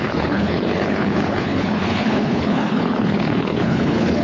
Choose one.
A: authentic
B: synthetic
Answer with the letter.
B